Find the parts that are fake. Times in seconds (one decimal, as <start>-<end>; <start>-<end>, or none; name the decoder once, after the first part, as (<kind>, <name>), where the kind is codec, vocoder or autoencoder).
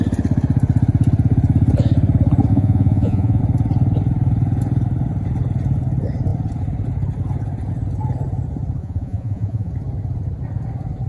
2.5-3.4 (vocoder, Vocos); 8.8-9.7